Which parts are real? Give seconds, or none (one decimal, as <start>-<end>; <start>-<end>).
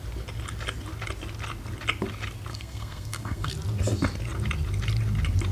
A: 0.0-2.5; 3.5-5.5